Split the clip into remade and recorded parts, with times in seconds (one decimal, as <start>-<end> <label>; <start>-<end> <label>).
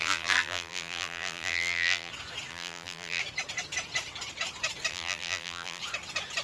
0.0-2.1 remade; 2.1-2.5 recorded; 2.5-3.2 remade; 3.2-4.9 recorded; 4.9-5.8 remade; 5.8-6.4 recorded